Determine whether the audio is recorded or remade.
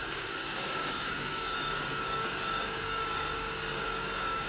remade